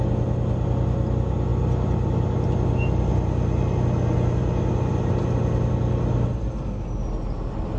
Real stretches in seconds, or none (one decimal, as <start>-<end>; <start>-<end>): 0.0-7.8